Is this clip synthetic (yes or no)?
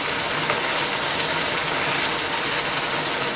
no